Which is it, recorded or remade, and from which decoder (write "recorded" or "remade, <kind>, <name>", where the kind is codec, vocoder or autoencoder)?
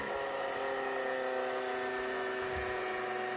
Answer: recorded